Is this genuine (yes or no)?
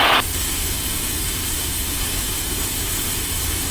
no